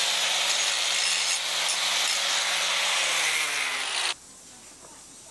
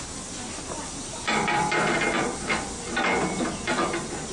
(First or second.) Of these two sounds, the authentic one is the first